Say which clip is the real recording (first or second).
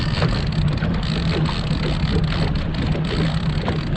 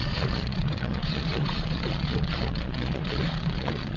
first